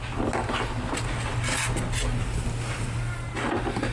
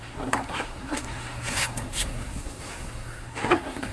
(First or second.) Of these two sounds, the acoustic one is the first